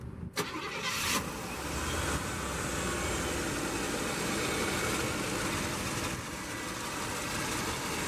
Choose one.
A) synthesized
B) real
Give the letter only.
B